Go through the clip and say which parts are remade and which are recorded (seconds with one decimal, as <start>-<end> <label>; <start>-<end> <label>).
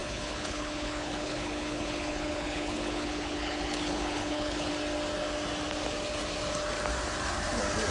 0.0-4.7 remade; 4.7-7.9 recorded